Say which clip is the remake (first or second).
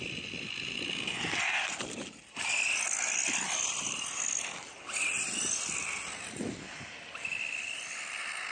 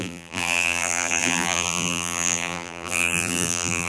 second